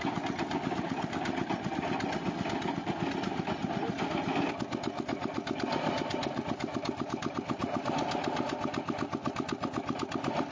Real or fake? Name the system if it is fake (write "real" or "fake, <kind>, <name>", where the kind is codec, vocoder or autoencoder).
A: real